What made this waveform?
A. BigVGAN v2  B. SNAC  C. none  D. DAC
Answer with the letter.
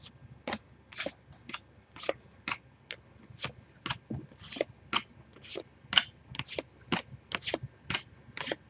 C